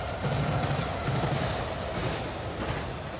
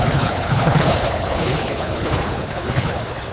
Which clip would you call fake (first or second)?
second